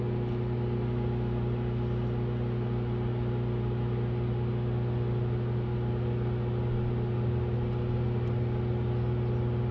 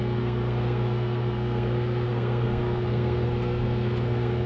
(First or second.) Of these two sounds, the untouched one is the first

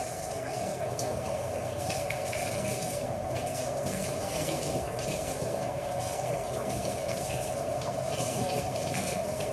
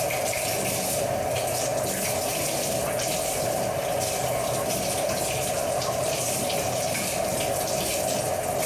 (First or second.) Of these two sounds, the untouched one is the second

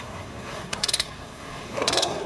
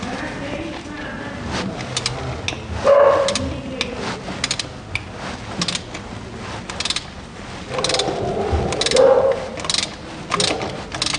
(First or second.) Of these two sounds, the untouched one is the second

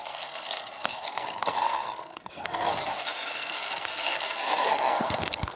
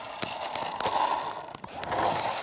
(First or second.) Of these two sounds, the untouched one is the second